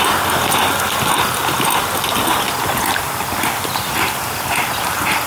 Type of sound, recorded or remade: recorded